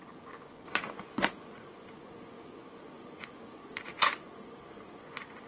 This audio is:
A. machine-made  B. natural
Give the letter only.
A